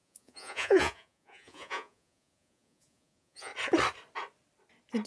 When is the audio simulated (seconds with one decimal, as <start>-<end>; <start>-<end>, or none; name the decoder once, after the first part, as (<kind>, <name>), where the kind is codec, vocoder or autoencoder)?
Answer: 0.0-3.5 (vocoder, Vocos)